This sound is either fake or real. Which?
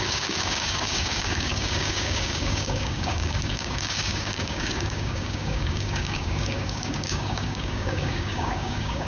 fake